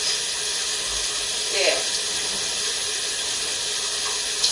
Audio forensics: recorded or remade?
recorded